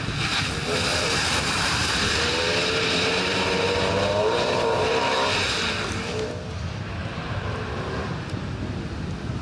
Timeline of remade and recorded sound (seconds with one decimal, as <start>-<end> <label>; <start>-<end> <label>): 0.0-0.9 recorded; 0.9-5.6 remade; 5.6-7.0 recorded; 7.0-8.5 remade; 8.5-9.4 recorded